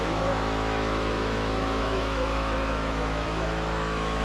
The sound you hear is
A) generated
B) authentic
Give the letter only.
A